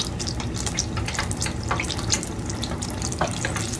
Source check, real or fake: real